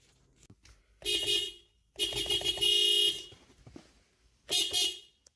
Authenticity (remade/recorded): recorded